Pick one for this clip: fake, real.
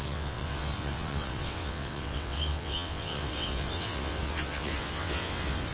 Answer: fake